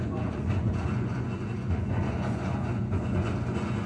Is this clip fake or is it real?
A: fake